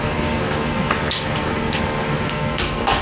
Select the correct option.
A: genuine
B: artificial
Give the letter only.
B